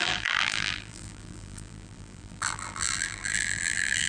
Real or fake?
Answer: fake